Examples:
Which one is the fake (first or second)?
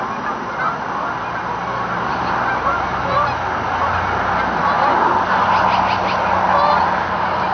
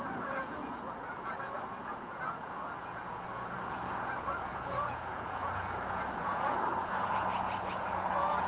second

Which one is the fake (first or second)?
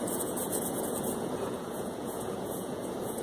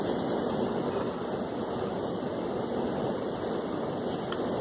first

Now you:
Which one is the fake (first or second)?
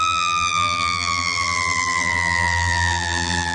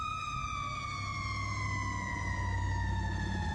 first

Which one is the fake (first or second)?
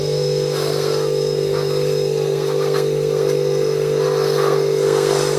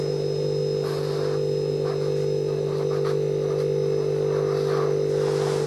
first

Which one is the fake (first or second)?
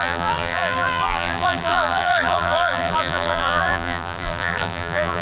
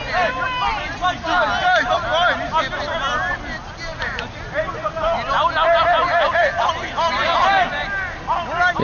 first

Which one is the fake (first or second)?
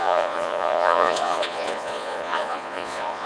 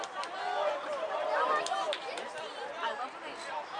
first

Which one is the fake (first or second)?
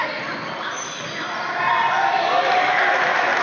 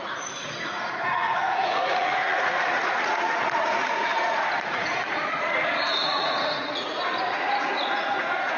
second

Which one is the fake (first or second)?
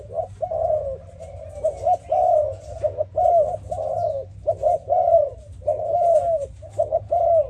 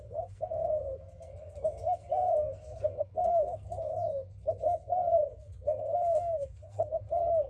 second